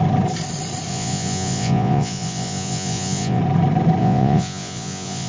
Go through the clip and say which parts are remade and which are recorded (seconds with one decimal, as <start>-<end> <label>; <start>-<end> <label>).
0.0-0.9 recorded; 0.9-3.4 remade; 3.4-4.0 recorded; 4.0-5.3 remade

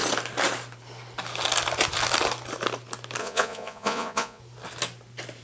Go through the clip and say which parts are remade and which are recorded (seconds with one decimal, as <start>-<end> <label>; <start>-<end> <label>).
0.0-3.2 recorded; 3.2-4.4 remade; 4.4-5.4 recorded